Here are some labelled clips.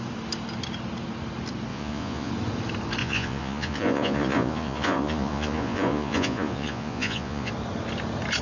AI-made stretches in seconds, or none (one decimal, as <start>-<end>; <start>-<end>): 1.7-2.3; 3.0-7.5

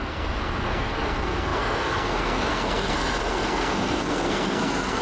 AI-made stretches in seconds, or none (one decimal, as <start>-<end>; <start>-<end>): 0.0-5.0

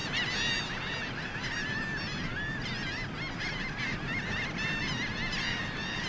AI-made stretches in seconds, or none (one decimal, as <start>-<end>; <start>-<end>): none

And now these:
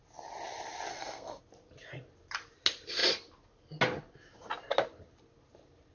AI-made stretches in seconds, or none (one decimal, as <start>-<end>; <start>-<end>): 0.9-1.4

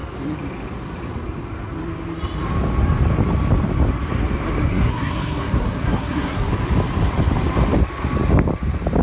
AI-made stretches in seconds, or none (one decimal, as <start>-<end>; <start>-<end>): 4.7-6.5